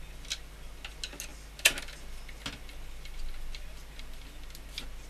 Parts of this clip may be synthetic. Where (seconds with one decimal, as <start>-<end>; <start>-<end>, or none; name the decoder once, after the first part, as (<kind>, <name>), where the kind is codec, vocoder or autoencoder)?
none